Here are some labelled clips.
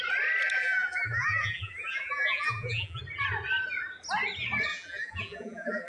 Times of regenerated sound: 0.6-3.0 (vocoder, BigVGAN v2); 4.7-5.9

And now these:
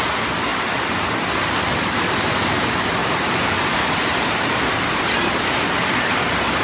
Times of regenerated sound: 3.0-4.6 (vocoder, BigVGAN v2)

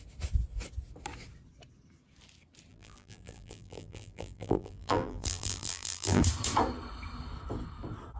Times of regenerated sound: 2.7-6.2 (vocoder, BigVGAN v2)